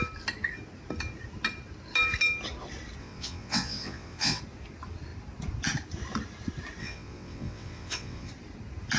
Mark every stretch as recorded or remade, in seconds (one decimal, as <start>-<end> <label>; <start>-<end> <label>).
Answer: 0.0-3.0 recorded; 3.0-4.4 remade; 4.4-6.8 recorded; 6.8-8.3 remade; 8.3-9.0 recorded